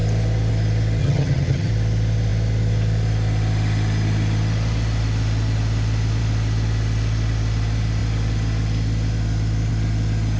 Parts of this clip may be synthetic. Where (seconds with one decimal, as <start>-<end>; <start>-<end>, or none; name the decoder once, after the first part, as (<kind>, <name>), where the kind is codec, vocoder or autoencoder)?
1.0-1.7 (vocoder, HiFi-GAN)